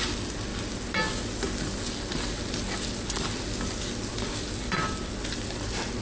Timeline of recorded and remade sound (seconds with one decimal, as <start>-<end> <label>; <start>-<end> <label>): 0.0-6.0 recorded

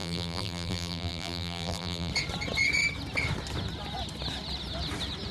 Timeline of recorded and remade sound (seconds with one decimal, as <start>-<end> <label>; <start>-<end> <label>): 0.0-2.1 remade; 2.1-5.3 recorded

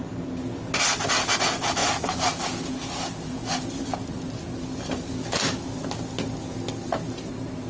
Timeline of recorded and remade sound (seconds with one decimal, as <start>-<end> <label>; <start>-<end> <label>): 0.0-7.7 recorded